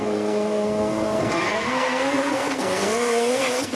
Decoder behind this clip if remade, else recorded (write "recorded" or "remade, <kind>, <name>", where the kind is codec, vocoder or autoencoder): remade, codec, SNAC